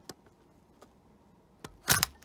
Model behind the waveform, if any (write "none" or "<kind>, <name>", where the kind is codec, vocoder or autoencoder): none